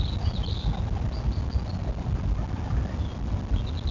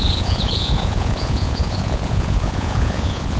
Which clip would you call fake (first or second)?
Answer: second